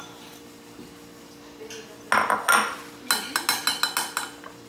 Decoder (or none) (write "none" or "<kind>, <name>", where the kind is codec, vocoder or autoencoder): none